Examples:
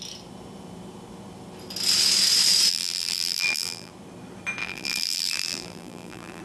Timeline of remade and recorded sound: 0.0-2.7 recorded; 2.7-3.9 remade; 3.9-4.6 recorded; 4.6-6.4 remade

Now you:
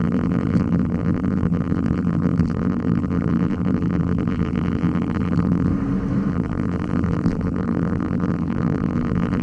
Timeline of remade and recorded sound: 0.0-5.7 remade; 5.7-6.3 recorded; 6.3-9.4 remade

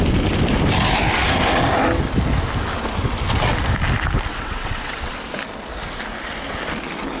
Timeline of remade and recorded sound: 0.0-4.3 recorded; 4.3-5.1 remade; 5.1-7.2 recorded